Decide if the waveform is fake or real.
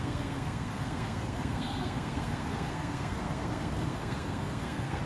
fake